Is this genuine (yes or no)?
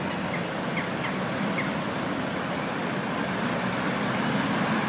yes